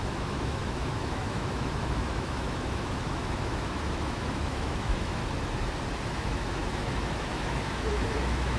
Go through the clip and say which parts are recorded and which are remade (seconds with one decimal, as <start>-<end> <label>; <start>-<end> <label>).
0.0-5.2 remade; 5.2-6.1 recorded; 6.1-8.6 remade